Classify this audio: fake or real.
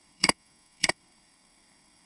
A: fake